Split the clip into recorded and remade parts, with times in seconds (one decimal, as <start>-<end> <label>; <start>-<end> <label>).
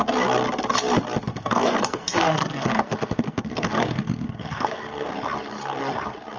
0.0-1.3 recorded; 1.3-5.1 remade; 5.1-6.4 recorded